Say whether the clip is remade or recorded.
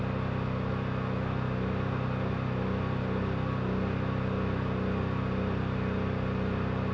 recorded